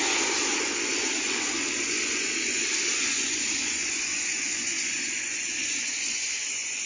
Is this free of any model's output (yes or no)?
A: no